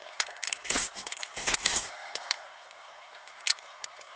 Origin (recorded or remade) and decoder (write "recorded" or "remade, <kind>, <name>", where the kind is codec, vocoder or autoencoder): remade, codec, SNAC